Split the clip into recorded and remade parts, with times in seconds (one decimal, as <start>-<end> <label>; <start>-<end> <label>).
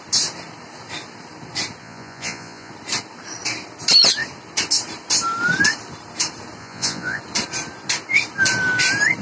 0.0-1.8 recorded; 1.8-2.7 remade; 2.7-6.6 recorded; 6.6-7.2 remade; 7.2-9.2 recorded